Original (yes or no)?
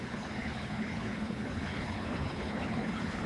no